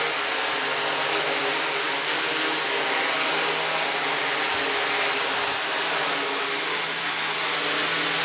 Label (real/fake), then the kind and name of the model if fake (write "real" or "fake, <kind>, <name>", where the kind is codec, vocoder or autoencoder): real